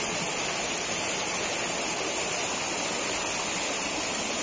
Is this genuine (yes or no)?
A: yes